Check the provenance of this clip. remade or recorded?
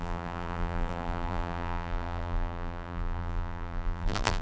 remade